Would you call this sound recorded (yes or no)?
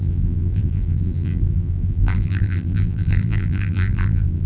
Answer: no